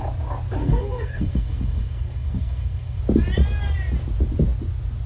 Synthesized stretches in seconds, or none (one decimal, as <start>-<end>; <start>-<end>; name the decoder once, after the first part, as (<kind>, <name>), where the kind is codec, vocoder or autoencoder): 0.6-3.0 (codec, SNAC)